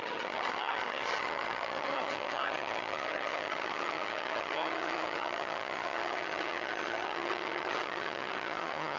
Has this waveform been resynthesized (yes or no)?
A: yes